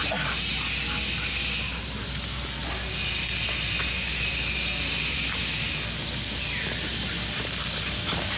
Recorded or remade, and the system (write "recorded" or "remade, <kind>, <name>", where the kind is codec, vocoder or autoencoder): recorded